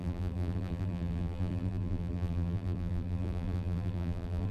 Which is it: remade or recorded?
remade